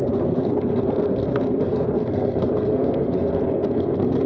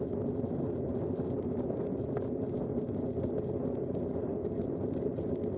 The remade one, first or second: first